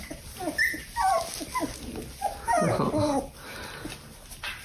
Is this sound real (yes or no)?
yes